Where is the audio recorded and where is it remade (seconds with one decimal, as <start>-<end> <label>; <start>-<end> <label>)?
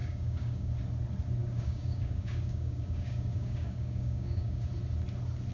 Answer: 0.0-0.7 remade; 0.7-1.4 recorded; 1.4-4.7 remade; 4.7-5.5 recorded